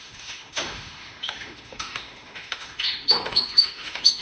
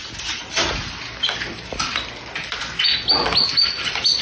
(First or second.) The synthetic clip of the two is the first